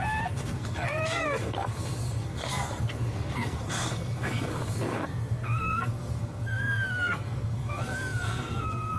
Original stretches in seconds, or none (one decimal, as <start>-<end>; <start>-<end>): none